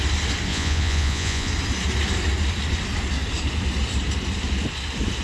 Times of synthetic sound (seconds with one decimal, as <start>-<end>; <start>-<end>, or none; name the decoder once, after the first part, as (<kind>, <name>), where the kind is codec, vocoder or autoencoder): 0.5-1.5 (vocoder, Vocos)